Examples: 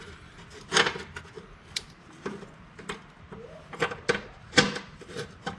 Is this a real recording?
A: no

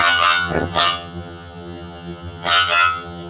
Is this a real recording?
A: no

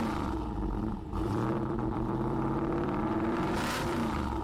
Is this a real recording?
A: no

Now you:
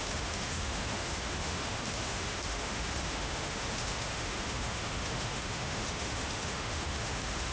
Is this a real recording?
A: no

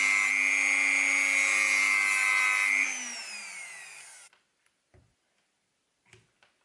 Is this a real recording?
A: yes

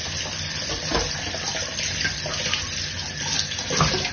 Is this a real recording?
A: yes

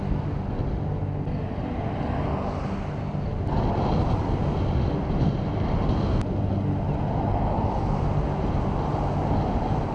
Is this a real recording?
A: yes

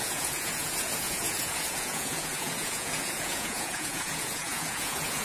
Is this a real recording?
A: no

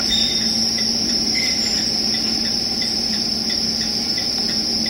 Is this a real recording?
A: no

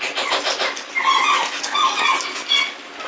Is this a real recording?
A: yes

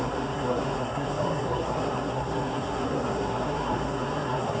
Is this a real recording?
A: no